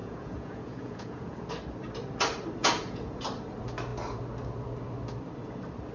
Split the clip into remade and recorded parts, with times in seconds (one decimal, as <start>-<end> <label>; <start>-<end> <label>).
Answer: 0.0-1.5 remade; 1.5-2.6 recorded; 2.6-3.2 remade; 3.2-5.9 recorded